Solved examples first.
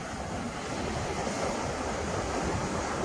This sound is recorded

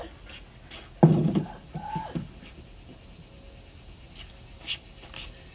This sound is recorded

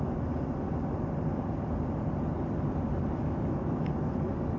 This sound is recorded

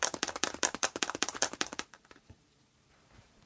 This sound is remade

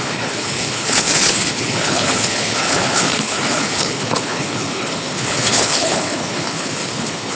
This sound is remade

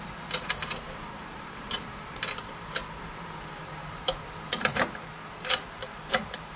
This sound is remade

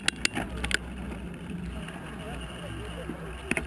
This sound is recorded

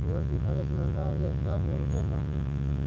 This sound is remade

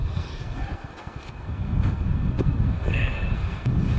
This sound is remade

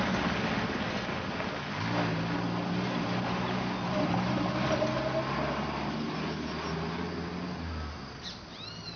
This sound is recorded